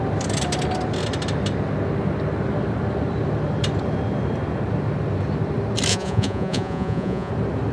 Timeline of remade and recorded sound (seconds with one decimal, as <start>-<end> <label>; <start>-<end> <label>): 0.0-5.9 recorded; 5.9-7.3 remade; 7.3-7.7 recorded